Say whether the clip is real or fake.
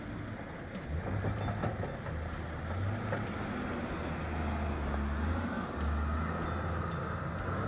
real